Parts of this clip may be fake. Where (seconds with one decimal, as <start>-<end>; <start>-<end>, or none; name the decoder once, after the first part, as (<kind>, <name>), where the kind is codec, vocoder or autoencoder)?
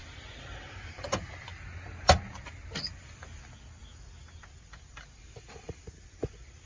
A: 0.0-1.5 (vocoder, BigVGAN v2); 2.0-6.7